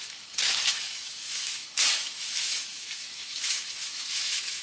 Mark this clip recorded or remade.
remade